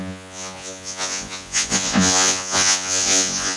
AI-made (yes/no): yes